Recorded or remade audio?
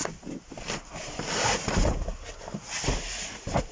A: recorded